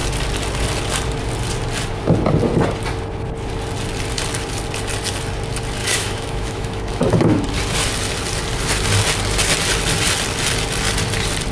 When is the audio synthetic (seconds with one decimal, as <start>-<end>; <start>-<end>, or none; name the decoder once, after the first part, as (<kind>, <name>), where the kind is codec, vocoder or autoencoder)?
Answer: 5.8-7.5 (autoencoder, DAC-VAE)